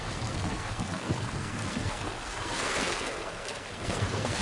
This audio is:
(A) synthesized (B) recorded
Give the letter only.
A